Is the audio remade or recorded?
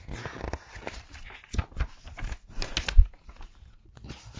recorded